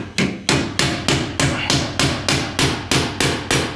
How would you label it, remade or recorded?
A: recorded